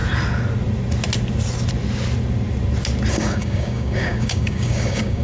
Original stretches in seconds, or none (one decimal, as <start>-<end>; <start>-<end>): 0.0-3.1